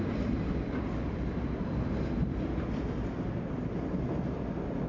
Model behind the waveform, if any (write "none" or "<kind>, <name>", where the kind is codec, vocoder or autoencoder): none